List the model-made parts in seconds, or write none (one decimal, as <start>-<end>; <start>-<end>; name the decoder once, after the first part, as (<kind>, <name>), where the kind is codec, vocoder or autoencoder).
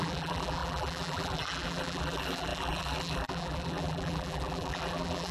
0.0-5.3 (vocoder, BigVGAN v2)